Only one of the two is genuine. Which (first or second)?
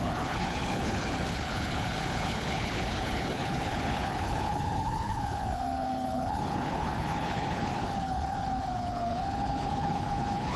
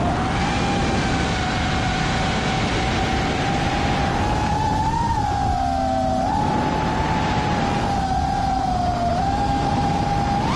second